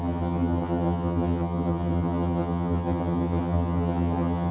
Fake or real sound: fake